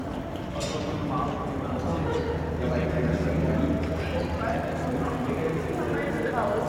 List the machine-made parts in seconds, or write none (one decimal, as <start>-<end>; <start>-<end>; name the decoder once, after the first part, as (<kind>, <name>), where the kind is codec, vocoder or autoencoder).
none